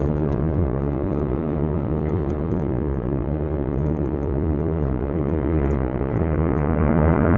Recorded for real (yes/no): no